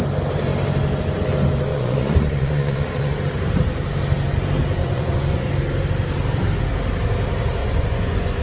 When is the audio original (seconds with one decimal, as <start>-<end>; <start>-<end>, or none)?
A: 0.0-1.7; 3.2-4.8; 5.5-7.6